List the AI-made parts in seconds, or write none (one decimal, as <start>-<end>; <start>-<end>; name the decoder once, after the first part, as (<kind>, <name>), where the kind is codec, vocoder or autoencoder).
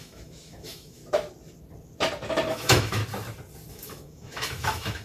0.0-1.0 (autoencoder, DAC-VAE); 2.5-3.0; 3.7-5.0